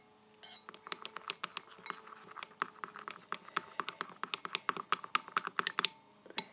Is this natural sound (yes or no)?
yes